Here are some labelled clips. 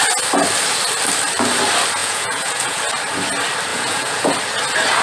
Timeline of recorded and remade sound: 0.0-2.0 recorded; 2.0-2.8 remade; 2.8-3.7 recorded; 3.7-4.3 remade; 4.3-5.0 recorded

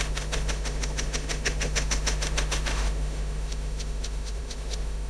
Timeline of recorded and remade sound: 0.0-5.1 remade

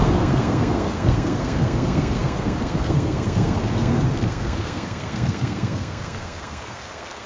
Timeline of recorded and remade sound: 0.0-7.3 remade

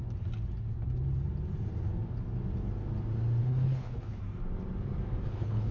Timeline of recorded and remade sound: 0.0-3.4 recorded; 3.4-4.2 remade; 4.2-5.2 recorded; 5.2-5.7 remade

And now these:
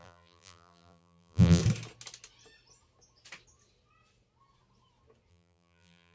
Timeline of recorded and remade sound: 0.0-1.6 remade; 1.6-5.3 recorded; 5.3-6.1 remade

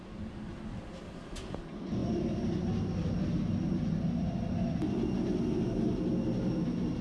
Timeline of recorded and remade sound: 0.0-7.0 recorded